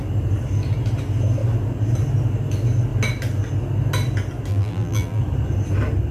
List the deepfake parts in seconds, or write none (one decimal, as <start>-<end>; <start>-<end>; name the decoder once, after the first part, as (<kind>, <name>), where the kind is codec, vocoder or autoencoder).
4.5-5.2 (vocoder, BigVGAN v2)